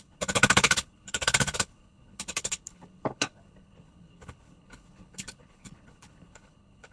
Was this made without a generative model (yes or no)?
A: no